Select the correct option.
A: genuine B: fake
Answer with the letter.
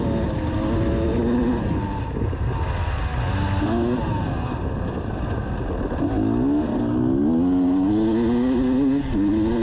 A